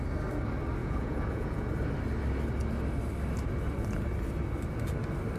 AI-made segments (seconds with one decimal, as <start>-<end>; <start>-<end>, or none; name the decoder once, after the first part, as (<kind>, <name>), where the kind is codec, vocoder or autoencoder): 0.8-1.7 (vocoder, Vocos)